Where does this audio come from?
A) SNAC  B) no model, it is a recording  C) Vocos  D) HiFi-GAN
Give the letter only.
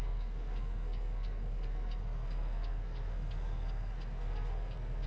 A